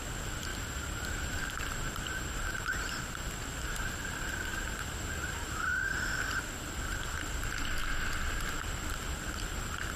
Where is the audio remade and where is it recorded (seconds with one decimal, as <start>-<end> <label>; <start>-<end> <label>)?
0.0-0.5 recorded; 0.5-3.0 remade; 3.0-4.5 recorded; 4.5-5.6 remade; 5.6-10.0 recorded